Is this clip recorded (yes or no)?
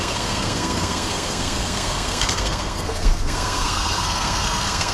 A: no